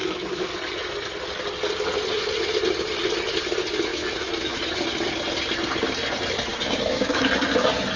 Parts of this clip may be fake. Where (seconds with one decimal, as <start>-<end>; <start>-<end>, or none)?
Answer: 0.0-0.5; 3.9-4.6; 6.5-7.3